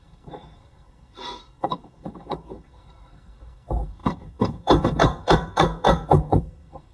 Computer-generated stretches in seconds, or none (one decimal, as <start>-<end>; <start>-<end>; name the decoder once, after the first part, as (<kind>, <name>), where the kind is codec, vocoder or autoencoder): 0.0-6.9 (codec, SNAC)